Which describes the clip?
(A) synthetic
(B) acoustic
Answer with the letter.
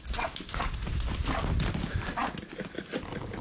B